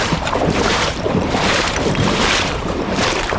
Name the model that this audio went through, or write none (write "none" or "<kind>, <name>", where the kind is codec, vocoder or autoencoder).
vocoder, BigVGAN v2